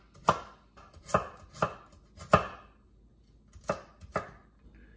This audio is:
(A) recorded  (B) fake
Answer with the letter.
A